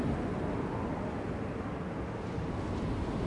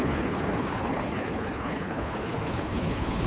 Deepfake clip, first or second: second